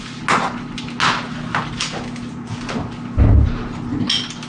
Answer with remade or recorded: recorded